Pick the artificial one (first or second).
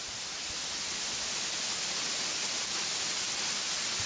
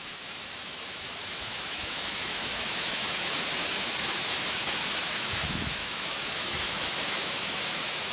second